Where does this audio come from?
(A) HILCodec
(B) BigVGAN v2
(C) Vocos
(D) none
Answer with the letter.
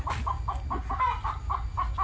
D